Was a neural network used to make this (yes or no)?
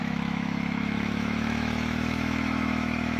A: yes